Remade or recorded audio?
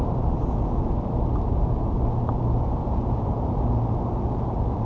recorded